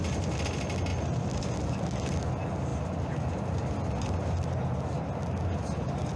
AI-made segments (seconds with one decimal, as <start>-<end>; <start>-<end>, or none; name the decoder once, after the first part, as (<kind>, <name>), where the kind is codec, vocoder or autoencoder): 0.9-2.3 (vocoder, BigVGAN v2)